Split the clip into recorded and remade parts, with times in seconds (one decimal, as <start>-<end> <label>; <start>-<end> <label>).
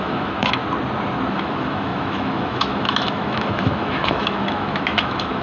0.0-0.6 remade; 0.6-1.3 recorded; 1.3-5.4 remade